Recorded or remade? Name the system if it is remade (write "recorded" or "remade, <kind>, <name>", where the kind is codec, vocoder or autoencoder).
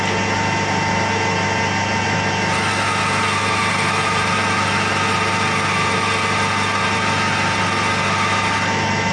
recorded